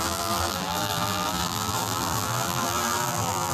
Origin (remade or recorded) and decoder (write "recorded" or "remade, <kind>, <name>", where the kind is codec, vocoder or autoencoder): remade, vocoder, BigVGAN v2